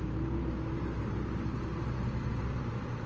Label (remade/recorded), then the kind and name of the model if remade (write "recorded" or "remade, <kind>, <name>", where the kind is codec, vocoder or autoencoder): recorded